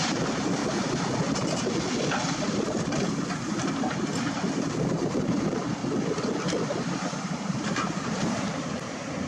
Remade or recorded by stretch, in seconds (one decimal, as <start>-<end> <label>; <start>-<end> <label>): 0.0-0.6 remade; 0.6-3.5 recorded; 3.5-5.8 remade; 5.8-6.8 recorded; 6.8-9.3 remade